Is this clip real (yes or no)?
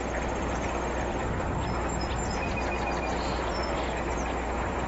yes